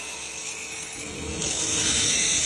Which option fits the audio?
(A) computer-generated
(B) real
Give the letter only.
A